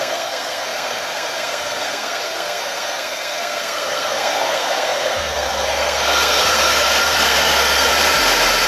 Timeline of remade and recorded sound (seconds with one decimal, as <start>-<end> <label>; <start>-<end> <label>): 0.0-7.9 remade; 7.9-8.7 recorded